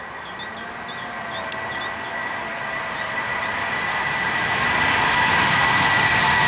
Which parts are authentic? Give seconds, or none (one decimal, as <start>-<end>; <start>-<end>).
0.0-2.2; 5.3-6.5